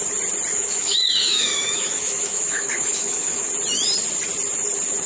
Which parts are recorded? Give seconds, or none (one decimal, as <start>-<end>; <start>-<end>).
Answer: 0.0-0.5; 3.5-5.1